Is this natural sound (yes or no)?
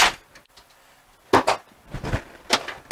yes